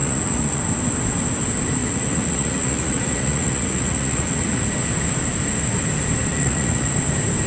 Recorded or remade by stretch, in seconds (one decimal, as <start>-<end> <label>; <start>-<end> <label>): 0.0-0.6 remade; 0.6-1.8 recorded; 1.8-4.6 remade; 4.6-6.3 recorded; 6.3-6.9 remade; 6.9-7.5 recorded